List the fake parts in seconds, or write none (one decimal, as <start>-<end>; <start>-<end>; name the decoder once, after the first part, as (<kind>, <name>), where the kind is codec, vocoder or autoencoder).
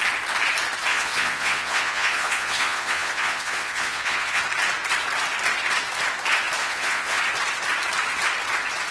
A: 0.9-4.4 (vocoder, Vocos); 6.6-7.2